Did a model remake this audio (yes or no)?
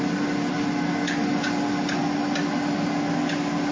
no